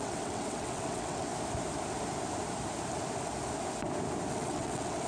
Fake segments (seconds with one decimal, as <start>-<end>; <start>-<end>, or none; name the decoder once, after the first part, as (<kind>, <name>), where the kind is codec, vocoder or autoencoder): 0.0-1.3 (vocoder, WaveNeXt); 4.3-5.1